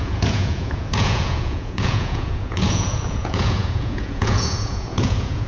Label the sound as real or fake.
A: fake